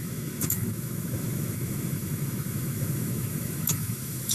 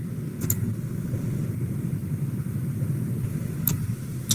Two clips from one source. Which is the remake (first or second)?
first